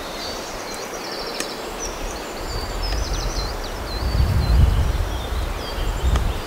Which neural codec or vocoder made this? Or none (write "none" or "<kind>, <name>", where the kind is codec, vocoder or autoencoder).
vocoder, BigVGAN v2